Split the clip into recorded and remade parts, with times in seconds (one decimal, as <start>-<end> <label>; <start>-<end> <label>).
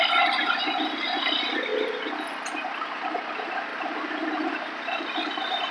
0.0-5.7 recorded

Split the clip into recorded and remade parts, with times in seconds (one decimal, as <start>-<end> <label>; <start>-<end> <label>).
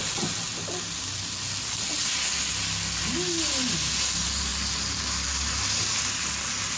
0.0-6.8 recorded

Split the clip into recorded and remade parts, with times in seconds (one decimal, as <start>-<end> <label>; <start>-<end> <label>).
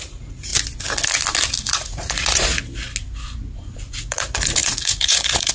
0.0-0.5 remade; 0.5-1.7 recorded; 1.7-2.5 remade; 2.5-3.9 recorded; 3.9-5.5 remade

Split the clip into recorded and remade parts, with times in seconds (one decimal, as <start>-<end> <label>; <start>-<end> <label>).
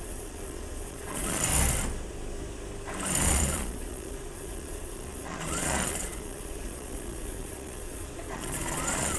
0.0-1.5 remade; 1.5-3.2 recorded; 3.2-9.2 remade